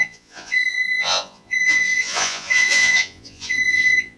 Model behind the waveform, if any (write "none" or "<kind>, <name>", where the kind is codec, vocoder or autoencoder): vocoder, Vocos